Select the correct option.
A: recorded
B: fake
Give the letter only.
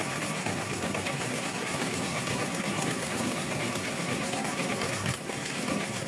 B